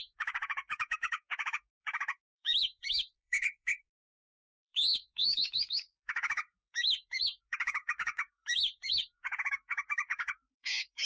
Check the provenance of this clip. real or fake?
fake